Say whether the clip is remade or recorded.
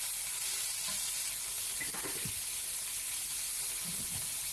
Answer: recorded